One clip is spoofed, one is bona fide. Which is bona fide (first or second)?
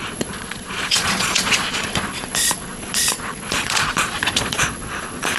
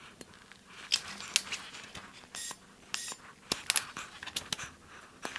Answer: second